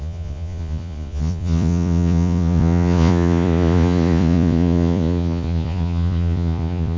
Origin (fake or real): fake